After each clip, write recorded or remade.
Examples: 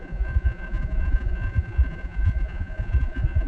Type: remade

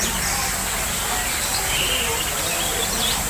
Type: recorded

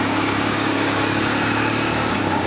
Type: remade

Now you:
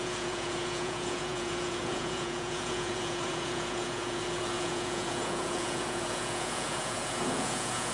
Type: remade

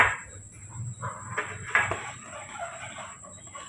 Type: recorded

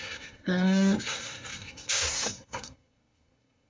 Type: remade